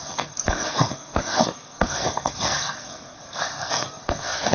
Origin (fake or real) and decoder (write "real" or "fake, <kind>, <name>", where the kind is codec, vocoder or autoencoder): fake, codec, SNAC